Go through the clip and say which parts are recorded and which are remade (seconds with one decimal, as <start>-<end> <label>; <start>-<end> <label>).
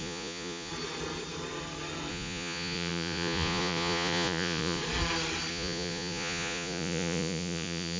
0.0-0.7 remade; 0.7-2.1 recorded; 2.1-4.8 remade; 4.8-5.5 recorded; 5.5-8.0 remade